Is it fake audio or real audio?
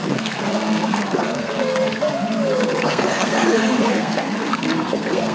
fake